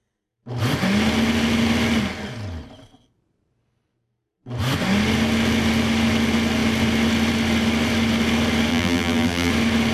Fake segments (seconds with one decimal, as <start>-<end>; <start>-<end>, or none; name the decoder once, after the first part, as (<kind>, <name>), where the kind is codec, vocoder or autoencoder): 8.7-9.5 (vocoder, BigVGAN v2)